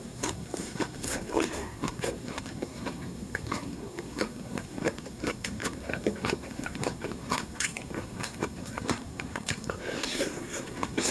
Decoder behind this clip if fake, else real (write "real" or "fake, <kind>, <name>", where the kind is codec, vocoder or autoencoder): fake, codec, SNAC